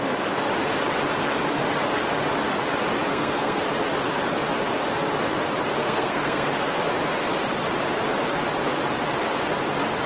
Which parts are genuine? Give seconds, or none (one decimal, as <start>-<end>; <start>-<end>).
0.0-3.1; 3.6-5.8; 6.5-10.1

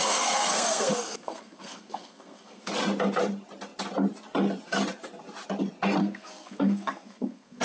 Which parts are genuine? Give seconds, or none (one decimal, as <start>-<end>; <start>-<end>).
2.7-6.0

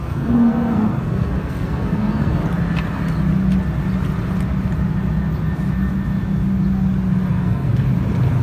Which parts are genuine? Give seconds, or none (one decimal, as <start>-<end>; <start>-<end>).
2.4-7.3; 7.7-8.4

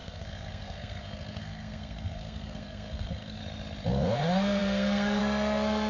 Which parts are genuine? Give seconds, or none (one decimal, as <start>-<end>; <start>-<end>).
3.4-3.9

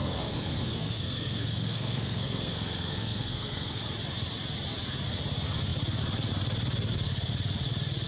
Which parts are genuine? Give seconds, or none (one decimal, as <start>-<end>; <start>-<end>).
3.8-8.1

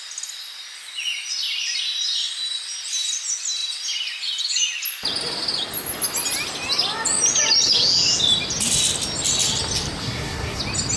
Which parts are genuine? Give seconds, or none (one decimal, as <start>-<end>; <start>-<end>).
0.0-10.0; 10.6-11.0

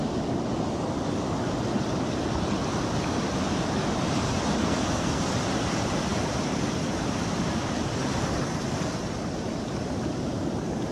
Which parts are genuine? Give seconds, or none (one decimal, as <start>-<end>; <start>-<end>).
0.0-4.6; 5.2-10.9